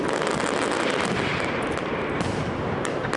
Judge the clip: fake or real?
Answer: real